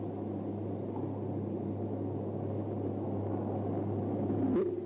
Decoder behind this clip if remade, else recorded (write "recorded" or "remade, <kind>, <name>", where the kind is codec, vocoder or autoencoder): recorded